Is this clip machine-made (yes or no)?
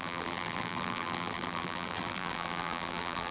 yes